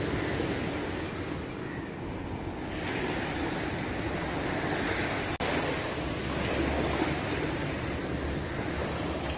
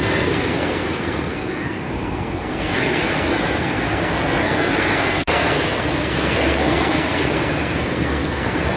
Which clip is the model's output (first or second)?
second